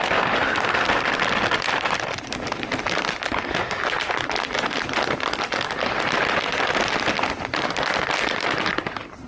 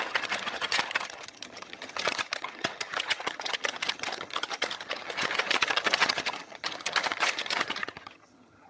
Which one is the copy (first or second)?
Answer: second